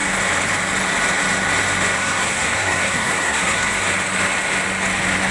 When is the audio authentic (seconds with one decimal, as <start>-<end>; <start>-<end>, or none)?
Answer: 0.0-2.0; 3.8-5.3